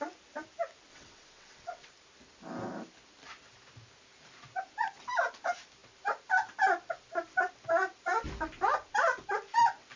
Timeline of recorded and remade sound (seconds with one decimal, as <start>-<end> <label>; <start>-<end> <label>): 0.0-0.9 recorded; 0.9-1.9 remade; 1.9-10.0 recorded